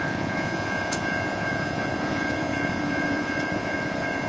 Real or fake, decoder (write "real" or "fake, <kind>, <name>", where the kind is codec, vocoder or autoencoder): fake, vocoder, Vocos